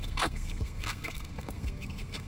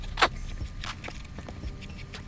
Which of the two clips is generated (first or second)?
first